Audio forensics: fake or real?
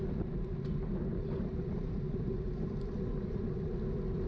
real